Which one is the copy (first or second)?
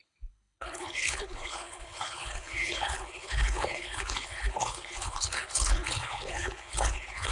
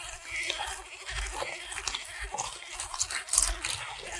first